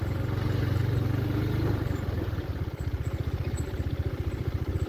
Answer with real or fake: real